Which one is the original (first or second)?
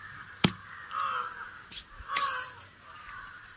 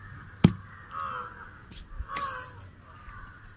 second